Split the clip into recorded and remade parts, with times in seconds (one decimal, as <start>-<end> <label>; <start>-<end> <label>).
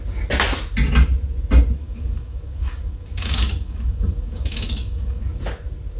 0.0-1.8 recorded; 1.8-5.4 remade; 5.4-6.0 recorded